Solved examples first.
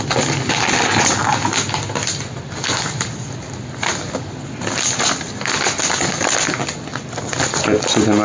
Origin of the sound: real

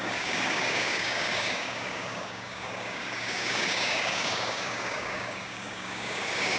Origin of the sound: fake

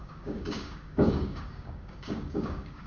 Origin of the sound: fake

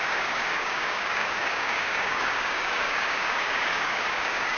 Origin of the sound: fake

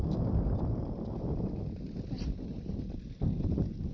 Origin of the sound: real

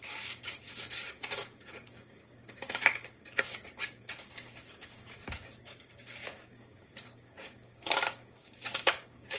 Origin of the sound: fake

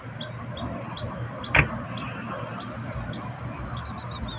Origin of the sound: real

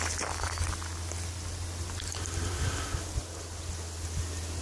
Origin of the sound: real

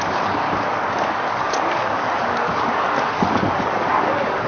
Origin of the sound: fake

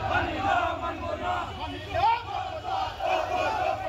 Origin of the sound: real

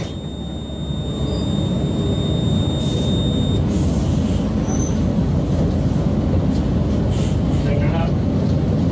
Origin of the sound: real